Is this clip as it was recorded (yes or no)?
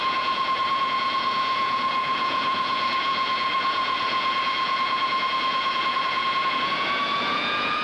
no